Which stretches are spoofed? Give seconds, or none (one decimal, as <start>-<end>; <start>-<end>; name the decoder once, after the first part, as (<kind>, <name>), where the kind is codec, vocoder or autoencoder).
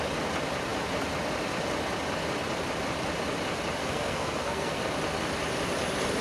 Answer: 3.8-4.8 (codec, SNAC)